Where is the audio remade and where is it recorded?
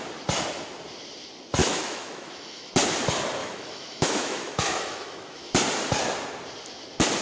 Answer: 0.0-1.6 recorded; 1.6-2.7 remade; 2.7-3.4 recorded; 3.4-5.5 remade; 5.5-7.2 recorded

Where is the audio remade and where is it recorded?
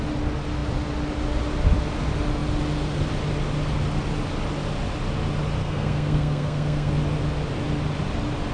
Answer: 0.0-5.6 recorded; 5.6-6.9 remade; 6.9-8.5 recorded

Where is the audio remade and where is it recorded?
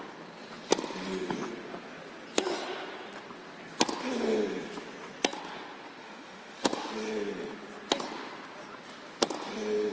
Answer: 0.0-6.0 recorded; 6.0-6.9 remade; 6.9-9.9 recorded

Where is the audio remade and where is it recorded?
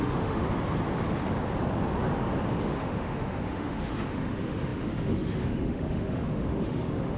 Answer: 0.0-0.4 remade; 0.4-2.6 recorded; 2.6-7.2 remade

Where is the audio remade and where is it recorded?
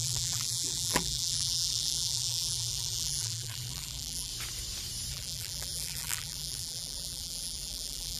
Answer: 0.0-4.3 remade; 4.3-5.1 recorded; 5.1-8.2 remade